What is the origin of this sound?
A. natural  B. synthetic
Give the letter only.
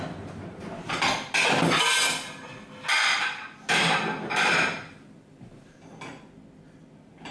A